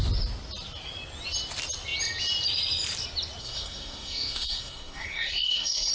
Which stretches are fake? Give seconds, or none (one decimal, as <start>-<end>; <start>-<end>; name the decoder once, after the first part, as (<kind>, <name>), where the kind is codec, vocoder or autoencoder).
3.4-5.9 (codec, SNAC)